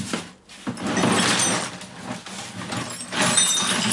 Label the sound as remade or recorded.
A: recorded